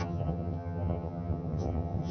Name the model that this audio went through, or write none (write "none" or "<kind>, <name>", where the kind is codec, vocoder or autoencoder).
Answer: vocoder, HiFi-GAN